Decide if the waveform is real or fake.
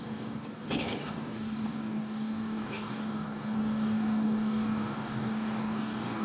fake